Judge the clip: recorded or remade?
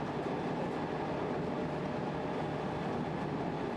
recorded